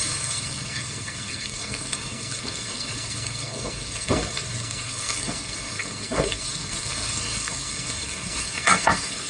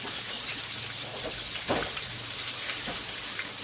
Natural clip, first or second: second